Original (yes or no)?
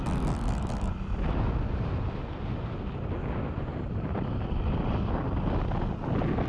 yes